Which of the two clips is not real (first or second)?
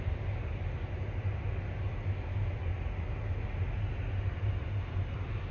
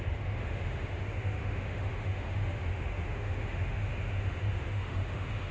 second